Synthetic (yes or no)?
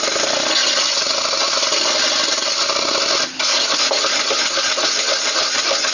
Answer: no